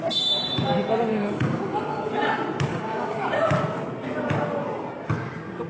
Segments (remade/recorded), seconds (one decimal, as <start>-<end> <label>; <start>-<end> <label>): 0.0-1.1 recorded; 1.1-2.1 remade; 2.1-2.7 recorded; 2.7-3.3 remade; 3.3-5.7 recorded